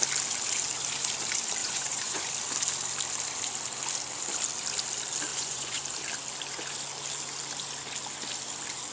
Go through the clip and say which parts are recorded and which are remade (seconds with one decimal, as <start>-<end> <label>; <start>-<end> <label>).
0.0-1.6 recorded; 1.6-2.3 remade; 2.3-5.3 recorded; 5.3-5.8 remade; 5.8-8.9 recorded